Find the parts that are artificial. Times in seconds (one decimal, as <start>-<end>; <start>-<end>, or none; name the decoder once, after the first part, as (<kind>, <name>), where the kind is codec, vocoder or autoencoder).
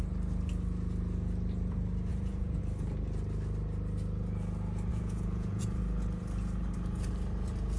2.1-2.6 (vocoder, Vocos); 4.9-5.8